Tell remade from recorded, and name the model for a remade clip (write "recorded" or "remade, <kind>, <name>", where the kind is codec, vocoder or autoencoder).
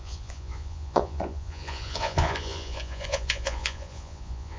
remade, vocoder, Vocos